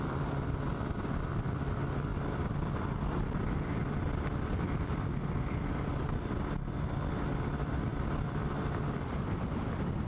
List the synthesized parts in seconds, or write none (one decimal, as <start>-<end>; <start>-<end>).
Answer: 7.9-9.3